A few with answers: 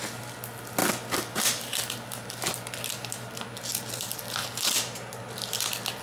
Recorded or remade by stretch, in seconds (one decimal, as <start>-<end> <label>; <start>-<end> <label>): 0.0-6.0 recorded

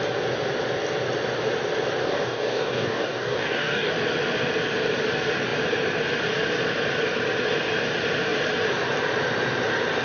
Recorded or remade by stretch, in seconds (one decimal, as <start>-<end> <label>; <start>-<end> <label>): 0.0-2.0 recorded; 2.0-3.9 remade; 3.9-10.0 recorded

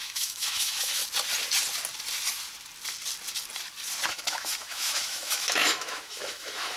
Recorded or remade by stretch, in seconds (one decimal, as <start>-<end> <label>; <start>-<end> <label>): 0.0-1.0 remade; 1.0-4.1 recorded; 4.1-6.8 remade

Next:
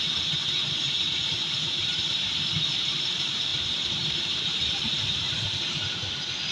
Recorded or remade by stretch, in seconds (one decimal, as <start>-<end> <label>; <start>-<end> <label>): 0.0-3.5 remade; 3.5-4.1 recorded; 4.1-6.5 remade